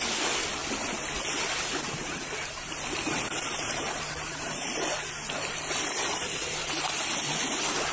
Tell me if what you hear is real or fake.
real